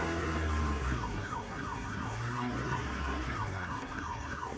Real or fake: fake